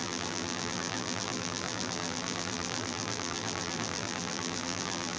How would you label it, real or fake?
fake